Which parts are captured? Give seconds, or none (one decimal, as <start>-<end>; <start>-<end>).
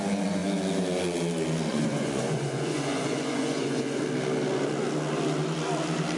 0.0-1.7; 4.0-6.2